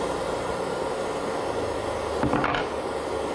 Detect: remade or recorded recorded